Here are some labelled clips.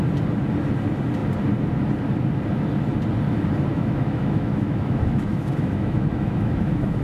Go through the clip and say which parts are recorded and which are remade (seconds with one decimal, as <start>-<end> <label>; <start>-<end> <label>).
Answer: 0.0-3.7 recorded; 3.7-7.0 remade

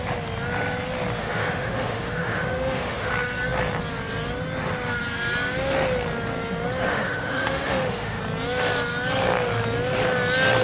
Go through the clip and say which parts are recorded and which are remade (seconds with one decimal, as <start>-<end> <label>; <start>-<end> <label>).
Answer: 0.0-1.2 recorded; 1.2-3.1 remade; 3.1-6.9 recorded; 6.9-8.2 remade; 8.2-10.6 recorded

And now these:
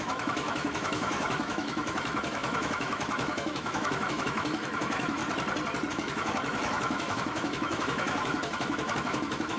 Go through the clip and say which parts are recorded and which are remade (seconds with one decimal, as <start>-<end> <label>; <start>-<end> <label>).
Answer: 0.0-5.2 remade; 5.2-5.9 recorded; 5.9-9.6 remade

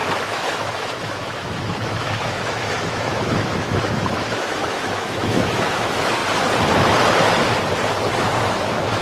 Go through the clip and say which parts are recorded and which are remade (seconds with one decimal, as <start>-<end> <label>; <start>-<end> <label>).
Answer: 0.0-6.2 remade; 6.2-8.2 recorded; 8.2-9.0 remade

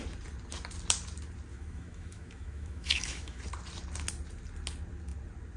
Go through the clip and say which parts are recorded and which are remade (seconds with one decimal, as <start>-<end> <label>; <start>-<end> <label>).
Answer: 0.0-1.5 recorded; 1.5-3.4 remade; 3.4-5.6 recorded

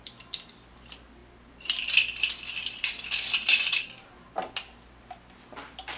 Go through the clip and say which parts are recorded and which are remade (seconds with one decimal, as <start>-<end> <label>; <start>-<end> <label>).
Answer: 0.0-6.0 recorded

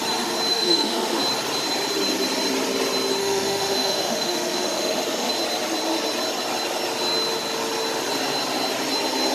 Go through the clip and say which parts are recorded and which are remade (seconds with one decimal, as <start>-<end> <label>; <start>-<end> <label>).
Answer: 0.0-0.5 recorded; 0.5-1.2 remade; 1.2-3.2 recorded; 3.2-5.3 remade; 5.3-9.3 recorded

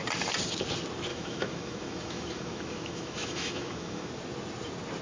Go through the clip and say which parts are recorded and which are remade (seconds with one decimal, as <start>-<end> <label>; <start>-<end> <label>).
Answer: 0.0-1.1 recorded; 1.1-4.1 remade; 4.1-5.0 recorded